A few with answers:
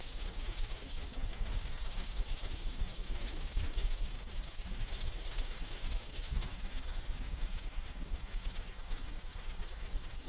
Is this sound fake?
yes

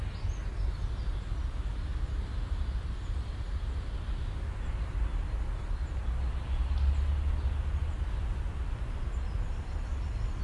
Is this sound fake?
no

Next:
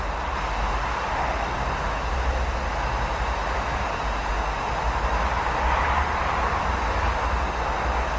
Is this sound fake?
no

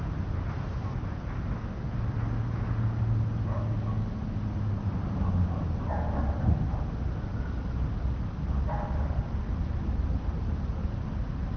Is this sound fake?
no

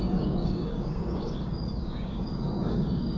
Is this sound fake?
yes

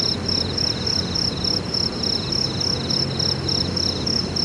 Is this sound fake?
no